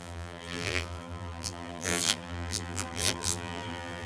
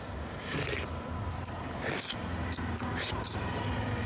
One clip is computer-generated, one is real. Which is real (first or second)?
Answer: second